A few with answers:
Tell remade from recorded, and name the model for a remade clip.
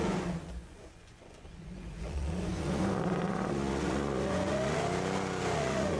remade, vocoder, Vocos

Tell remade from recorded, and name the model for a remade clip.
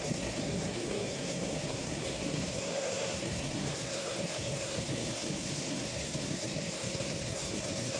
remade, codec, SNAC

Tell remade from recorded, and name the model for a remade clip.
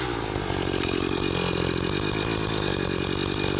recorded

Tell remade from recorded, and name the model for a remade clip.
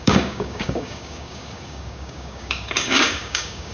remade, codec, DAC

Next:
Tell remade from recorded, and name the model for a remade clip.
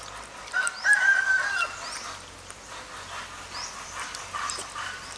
recorded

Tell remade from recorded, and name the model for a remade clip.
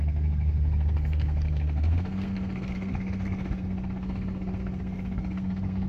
remade, codec, SNAC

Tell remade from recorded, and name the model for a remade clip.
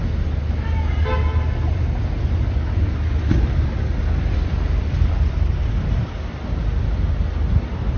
recorded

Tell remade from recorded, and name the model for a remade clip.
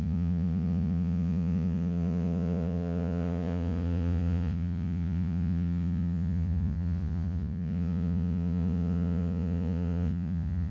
remade, vocoder, Vocos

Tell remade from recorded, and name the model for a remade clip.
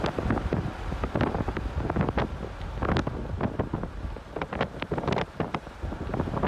recorded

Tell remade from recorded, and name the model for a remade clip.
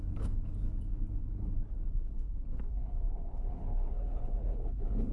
remade, codec, HILCodec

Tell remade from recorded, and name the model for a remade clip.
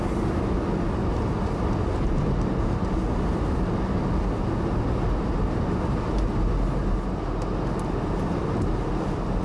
recorded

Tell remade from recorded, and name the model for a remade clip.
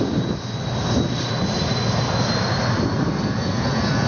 recorded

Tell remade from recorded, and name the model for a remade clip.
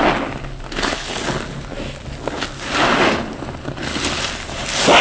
recorded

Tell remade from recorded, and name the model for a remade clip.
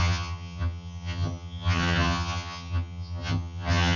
remade, vocoder, HiFi-GAN